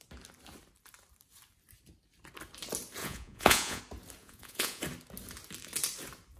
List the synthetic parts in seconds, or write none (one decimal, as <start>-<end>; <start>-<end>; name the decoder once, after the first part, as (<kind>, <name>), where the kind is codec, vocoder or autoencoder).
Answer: 3.0-3.8 (vocoder, Vocos); 4.2-4.8